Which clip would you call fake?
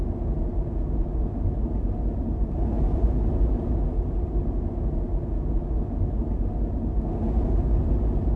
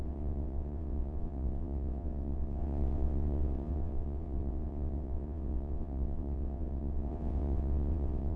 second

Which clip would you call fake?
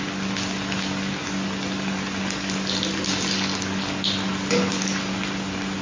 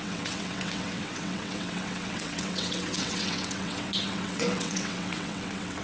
second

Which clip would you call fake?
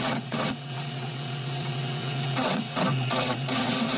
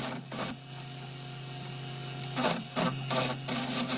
first